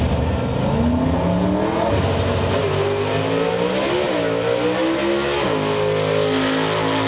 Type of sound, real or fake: real